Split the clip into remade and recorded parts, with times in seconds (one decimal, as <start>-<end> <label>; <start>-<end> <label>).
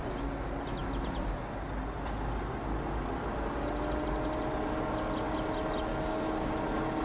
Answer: 0.0-5.9 recorded; 5.9-6.5 remade; 6.5-7.0 recorded